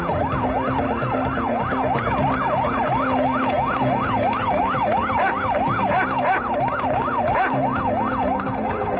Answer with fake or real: fake